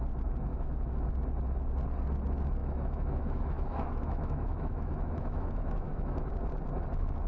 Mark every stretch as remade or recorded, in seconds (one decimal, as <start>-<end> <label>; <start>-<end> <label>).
0.0-0.5 recorded; 0.5-1.1 remade; 1.1-2.6 recorded; 2.6-6.3 remade; 6.3-7.3 recorded